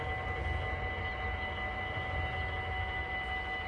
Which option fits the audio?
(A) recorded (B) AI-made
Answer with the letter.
A